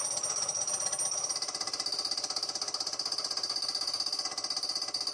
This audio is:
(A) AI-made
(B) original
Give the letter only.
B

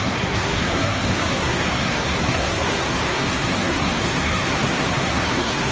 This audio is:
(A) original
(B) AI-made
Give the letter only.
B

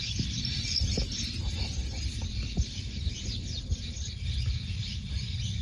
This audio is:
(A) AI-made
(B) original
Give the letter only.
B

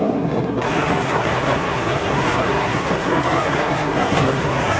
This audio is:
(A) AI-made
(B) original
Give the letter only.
A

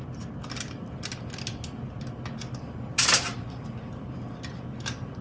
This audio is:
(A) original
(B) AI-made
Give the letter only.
A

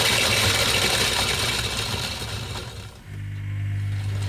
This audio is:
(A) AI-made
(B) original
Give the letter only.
B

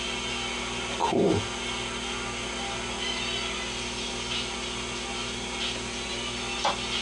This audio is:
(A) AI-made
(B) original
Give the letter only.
B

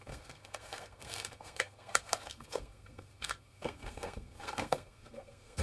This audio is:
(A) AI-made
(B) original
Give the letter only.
A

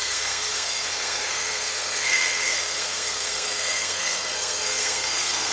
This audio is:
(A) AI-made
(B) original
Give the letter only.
A